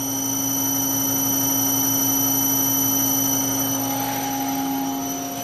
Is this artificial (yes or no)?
no